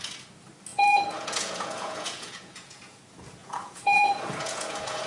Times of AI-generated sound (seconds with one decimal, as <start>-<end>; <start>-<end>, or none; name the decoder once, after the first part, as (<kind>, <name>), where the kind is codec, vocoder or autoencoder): 0.7-3.0 (vocoder, Vocos); 3.4-5.1